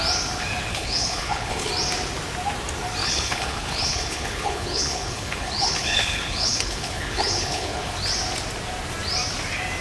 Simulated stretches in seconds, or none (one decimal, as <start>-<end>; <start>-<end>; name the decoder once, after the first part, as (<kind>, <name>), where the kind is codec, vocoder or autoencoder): 0.7-1.7 (codec, HILCodec); 3.0-7.9

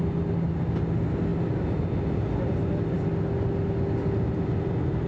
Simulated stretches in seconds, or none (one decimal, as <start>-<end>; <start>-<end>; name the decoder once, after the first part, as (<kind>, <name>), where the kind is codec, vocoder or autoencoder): none

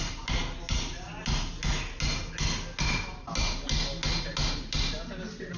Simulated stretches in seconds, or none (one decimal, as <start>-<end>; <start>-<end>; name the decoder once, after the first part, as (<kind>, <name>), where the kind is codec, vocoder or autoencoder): none

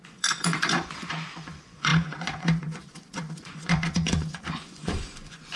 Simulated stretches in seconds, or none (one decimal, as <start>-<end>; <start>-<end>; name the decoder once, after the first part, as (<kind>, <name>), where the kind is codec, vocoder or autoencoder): 0.0-5.6 (vocoder, Vocos)